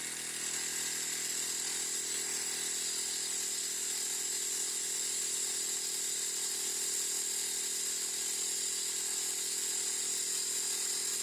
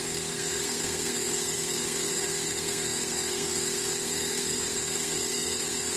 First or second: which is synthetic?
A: second